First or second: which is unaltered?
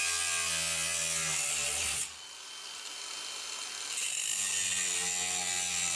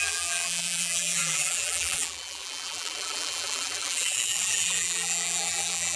first